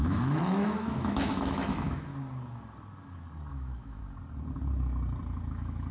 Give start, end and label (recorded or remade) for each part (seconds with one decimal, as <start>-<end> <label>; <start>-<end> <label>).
0.0-2.1 remade; 2.1-3.5 recorded; 3.5-4.0 remade; 4.0-5.5 recorded; 5.5-5.9 remade